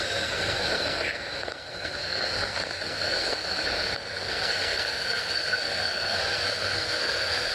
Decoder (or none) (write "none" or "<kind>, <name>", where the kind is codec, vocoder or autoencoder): codec, SNAC